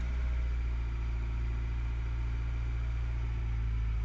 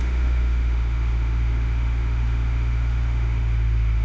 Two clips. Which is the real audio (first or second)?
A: first